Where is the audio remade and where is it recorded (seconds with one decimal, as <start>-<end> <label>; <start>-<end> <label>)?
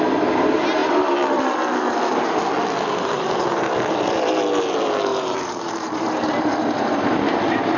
0.0-0.8 recorded; 0.8-2.4 remade; 2.4-5.1 recorded; 5.1-6.9 remade; 6.9-7.8 recorded